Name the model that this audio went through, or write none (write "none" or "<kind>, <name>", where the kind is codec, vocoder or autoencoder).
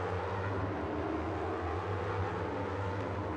none